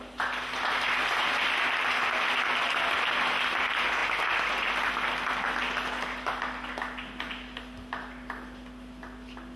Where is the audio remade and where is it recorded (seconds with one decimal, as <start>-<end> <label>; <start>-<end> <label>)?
0.0-9.6 recorded